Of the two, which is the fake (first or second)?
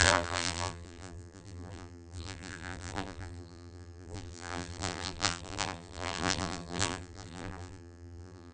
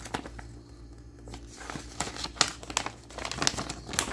first